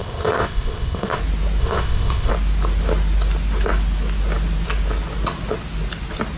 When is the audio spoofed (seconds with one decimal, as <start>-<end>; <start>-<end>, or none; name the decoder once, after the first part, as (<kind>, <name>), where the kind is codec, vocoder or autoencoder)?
0.0-1.2 (codec, ZipCodec); 1.6-2.3